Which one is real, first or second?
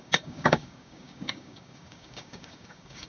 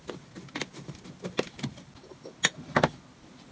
second